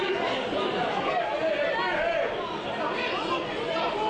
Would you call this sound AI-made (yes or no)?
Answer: no